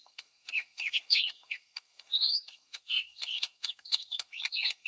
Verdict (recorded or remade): remade